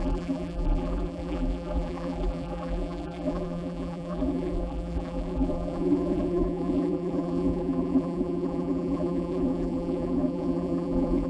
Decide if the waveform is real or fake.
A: fake